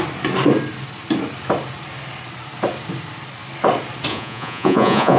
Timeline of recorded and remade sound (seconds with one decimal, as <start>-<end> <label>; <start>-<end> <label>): 0.0-4.1 recorded; 4.1-5.2 remade